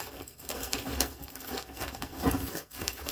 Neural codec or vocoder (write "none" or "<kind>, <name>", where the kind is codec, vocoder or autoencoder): codec, SNAC